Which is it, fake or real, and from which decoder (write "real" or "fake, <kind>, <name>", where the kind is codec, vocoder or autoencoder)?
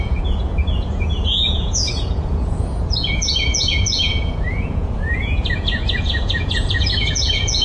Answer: fake, vocoder, Vocos